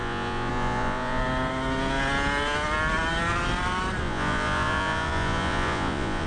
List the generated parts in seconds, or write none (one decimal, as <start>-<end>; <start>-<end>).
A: 0.0-1.2; 4.0-6.3